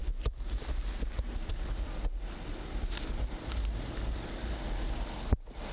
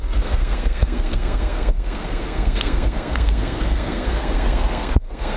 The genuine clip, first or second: first